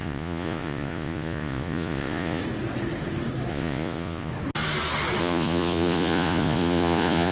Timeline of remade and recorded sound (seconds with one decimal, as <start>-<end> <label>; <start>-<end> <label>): 0.0-2.4 remade; 2.4-3.5 recorded; 3.5-4.3 remade; 4.3-5.2 recorded; 5.2-7.3 remade